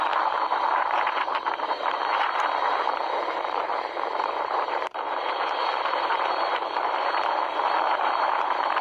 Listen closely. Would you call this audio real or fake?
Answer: fake